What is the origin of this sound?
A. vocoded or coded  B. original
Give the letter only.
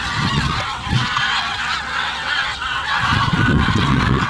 A